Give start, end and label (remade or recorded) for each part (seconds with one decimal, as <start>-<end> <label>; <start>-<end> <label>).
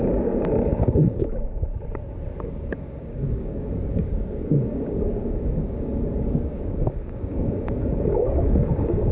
0.0-1.7 remade; 1.7-2.4 recorded; 2.4-9.1 remade